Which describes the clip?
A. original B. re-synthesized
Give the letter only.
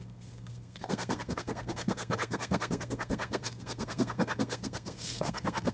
B